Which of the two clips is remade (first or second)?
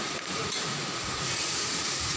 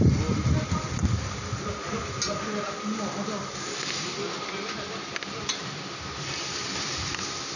first